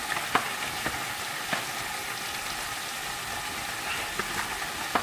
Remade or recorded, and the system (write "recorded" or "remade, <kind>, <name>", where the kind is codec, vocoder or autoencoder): recorded